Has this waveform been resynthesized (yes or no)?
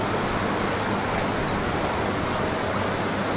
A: no